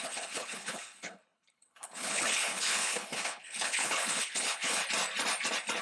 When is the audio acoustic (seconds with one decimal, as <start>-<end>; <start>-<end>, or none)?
4.8-5.8